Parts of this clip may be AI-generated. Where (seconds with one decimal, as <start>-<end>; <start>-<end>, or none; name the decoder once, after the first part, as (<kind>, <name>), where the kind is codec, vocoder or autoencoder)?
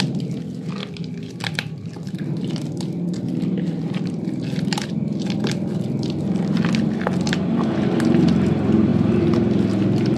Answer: 0.0-10.2 (vocoder, BigVGAN v2)